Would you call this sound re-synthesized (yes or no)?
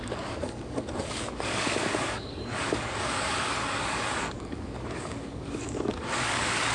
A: yes